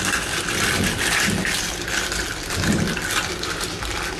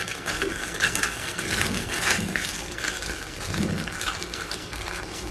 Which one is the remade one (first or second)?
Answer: second